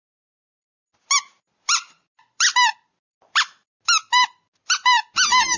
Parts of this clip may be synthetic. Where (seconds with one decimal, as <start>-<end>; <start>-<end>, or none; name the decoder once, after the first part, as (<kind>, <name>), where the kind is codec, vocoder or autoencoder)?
none